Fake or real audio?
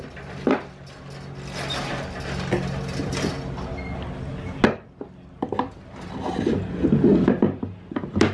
real